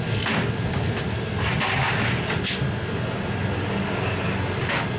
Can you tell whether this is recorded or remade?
recorded